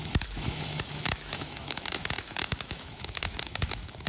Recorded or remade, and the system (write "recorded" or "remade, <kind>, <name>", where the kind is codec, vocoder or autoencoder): remade, autoencoder, DAC-VAE